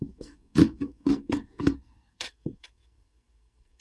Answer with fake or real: fake